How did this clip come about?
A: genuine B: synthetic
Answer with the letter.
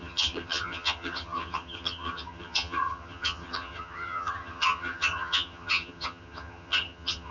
B